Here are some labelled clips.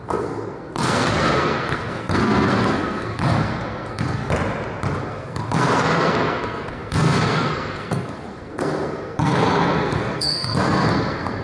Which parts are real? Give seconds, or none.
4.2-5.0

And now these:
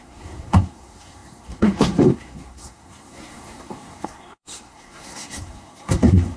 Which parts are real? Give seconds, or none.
none

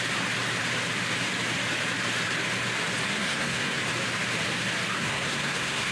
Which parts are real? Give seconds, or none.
0.0-3.1; 3.8-5.0

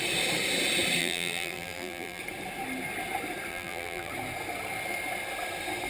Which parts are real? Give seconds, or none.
0.0-1.0; 2.2-3.5; 4.1-5.9

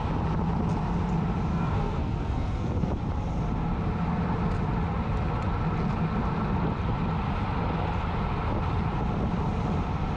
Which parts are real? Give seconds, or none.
0.0-1.5; 2.9-10.2